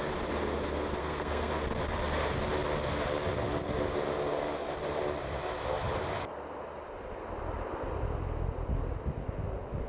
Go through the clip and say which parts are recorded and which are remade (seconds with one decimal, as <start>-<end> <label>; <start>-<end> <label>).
0.0-1.0 recorded; 1.0-1.5 remade; 1.5-9.9 recorded